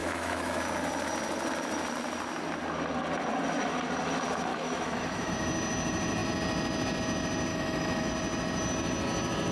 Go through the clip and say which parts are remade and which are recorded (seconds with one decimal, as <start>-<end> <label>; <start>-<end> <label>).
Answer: 0.0-0.6 remade; 0.6-4.5 recorded; 4.5-5.3 remade; 5.3-7.5 recorded; 7.5-8.1 remade; 8.1-9.5 recorded